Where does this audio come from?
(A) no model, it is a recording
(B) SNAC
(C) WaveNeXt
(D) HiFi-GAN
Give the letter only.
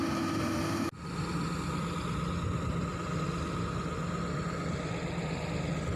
A